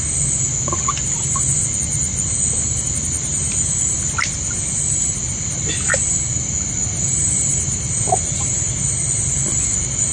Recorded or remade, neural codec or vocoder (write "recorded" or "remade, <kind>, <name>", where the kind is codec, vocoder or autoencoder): recorded